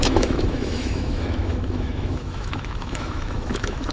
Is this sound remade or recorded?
remade